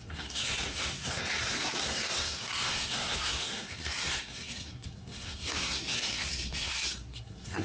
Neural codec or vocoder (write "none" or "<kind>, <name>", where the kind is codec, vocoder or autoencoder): codec, SNAC